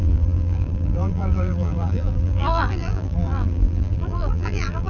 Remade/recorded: remade